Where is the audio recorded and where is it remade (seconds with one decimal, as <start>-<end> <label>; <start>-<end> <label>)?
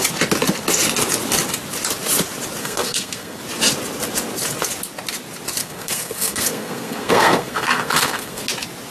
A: 0.0-2.6 recorded; 2.6-3.4 remade; 3.4-5.6 recorded; 5.6-8.4 remade; 8.4-8.9 recorded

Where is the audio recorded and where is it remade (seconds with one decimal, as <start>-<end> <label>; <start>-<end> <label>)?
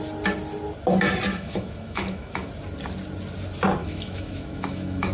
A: 0.0-1.3 recorded; 1.3-2.5 remade; 2.5-3.8 recorded; 3.8-5.1 remade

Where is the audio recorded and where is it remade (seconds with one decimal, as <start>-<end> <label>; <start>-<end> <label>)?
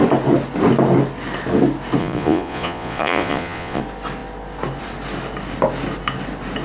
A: 0.0-2.0 recorded; 2.0-3.8 remade; 3.8-6.6 recorded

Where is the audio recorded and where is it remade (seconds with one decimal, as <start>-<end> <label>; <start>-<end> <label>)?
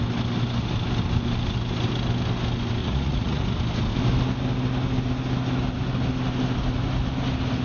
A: 0.0-2.8 recorded; 2.8-3.4 remade; 3.4-7.6 recorded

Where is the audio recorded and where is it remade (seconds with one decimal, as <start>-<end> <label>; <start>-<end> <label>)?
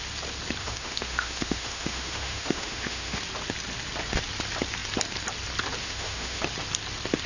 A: 0.0-0.6 recorded; 0.6-3.2 remade; 3.2-5.8 recorded; 5.8-6.4 remade; 6.4-7.3 recorded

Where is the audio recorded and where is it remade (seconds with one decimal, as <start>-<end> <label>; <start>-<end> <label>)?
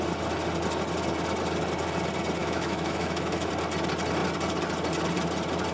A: 0.0-2.4 recorded; 2.4-3.5 remade; 3.5-5.7 recorded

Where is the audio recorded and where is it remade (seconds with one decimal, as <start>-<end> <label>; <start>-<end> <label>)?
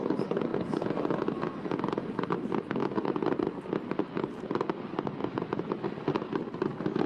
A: 0.0-7.1 recorded